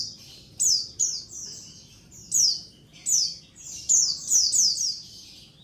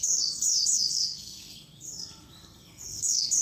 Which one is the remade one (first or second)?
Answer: second